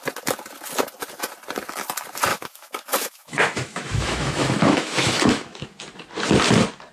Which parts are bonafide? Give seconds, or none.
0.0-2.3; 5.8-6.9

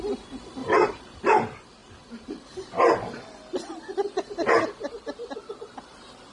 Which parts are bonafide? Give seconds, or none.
0.0-0.6; 1.2-1.8; 2.6-6.3